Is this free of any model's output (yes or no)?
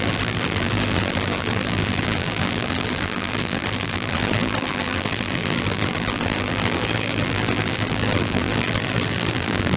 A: no